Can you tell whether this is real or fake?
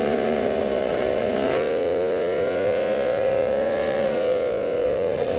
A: fake